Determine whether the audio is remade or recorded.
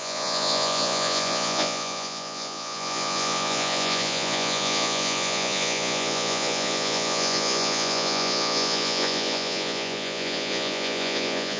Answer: remade